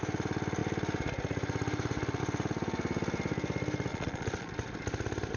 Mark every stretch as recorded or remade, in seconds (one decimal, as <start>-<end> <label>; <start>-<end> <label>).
0.0-3.9 recorded; 3.9-4.5 remade; 4.5-5.4 recorded